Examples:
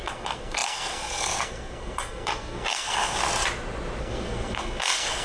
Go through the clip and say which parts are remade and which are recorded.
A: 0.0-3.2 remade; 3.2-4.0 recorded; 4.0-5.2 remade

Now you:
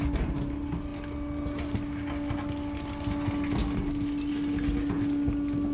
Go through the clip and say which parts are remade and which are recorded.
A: 0.0-5.7 recorded

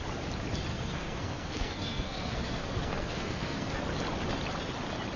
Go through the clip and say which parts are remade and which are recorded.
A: 0.0-0.7 recorded; 0.7-3.8 remade; 3.8-5.2 recorded

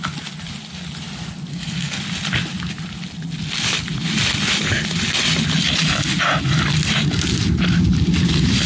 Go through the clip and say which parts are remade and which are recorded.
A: 0.0-1.5 recorded; 1.5-2.0 remade; 2.0-8.7 recorded